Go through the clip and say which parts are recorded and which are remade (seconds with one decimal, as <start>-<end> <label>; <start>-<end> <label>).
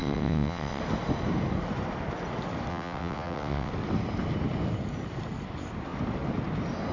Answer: 0.0-0.8 remade; 0.8-2.7 recorded; 2.7-3.7 remade; 3.7-6.9 recorded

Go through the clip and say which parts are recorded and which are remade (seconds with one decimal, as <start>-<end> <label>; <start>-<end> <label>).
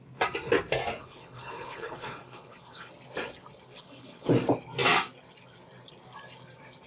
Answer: 0.0-1.0 recorded; 1.0-2.9 remade; 2.9-3.8 recorded; 3.8-4.3 remade; 4.3-6.9 recorded